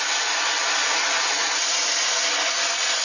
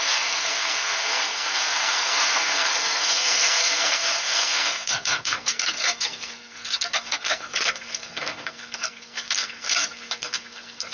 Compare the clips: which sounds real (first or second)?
first